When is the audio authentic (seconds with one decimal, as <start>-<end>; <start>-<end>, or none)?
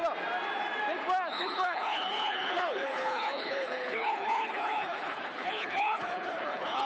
0.0-1.3